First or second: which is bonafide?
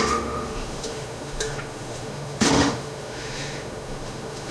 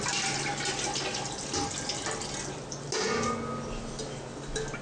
second